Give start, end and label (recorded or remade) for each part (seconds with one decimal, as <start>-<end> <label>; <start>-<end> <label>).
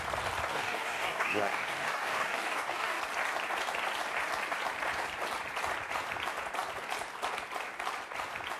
0.0-0.5 recorded; 0.5-3.0 remade; 3.0-8.6 recorded